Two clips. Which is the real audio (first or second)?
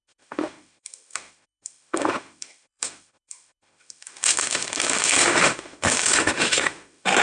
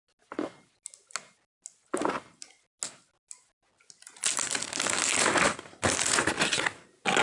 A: second